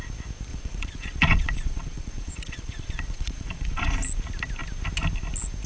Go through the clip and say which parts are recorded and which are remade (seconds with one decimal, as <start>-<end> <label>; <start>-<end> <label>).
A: 0.0-0.5 recorded; 0.5-3.9 remade; 3.9-5.7 recorded